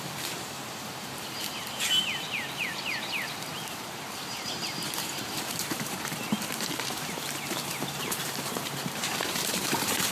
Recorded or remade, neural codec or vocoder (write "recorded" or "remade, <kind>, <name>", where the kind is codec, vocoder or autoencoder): remade, vocoder, BigVGAN v2